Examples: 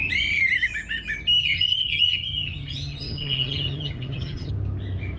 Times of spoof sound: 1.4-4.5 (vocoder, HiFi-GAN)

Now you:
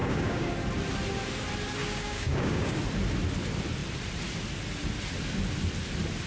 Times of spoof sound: 0.0-0.5 (codec, DAC); 1.8-2.8

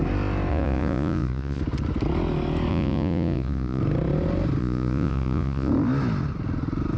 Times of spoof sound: 0.5-1.6 (vocoder, Vocos); 2.7-3.8; 4.6-5.7

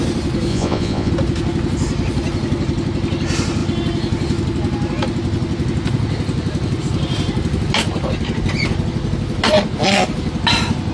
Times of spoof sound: 0.5-1.1 (vocoder, Vocos)

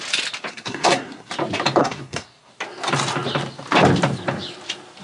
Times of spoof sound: 0.5-1.3 (codec, SNAC); 1.8-2.5

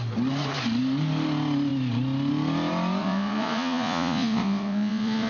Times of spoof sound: 3.0-5.3 (vocoder, Vocos)